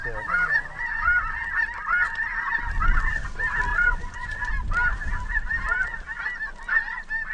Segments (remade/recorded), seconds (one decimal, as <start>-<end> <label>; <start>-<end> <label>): 0.0-3.7 recorded; 3.7-4.5 remade; 4.5-7.3 recorded